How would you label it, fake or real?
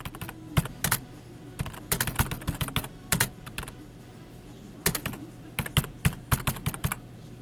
real